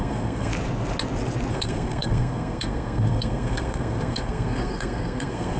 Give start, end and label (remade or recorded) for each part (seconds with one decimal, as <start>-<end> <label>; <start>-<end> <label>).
0.0-0.5 remade; 0.5-1.5 recorded; 1.5-5.6 remade